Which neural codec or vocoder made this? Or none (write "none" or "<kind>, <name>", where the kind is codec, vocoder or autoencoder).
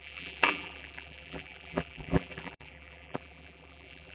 vocoder, BigVGAN v2